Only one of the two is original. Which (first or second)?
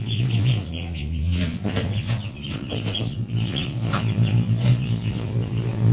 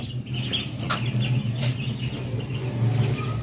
second